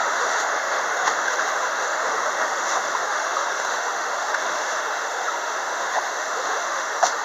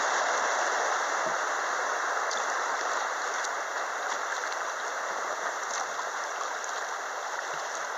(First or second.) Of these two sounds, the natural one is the second